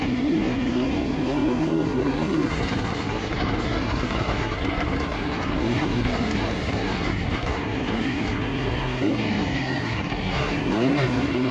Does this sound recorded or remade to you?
remade